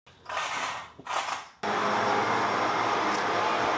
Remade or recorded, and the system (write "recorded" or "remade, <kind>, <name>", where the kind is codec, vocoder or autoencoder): recorded